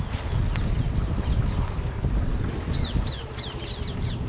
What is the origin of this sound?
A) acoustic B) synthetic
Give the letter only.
A